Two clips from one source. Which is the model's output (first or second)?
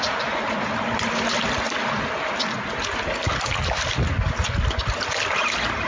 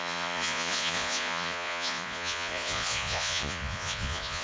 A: second